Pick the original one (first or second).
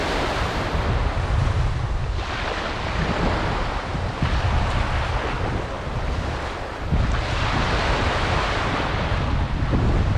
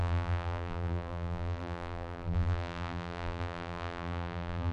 first